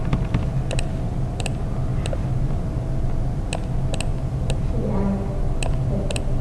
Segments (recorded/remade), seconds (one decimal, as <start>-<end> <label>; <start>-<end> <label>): 0.0-6.4 recorded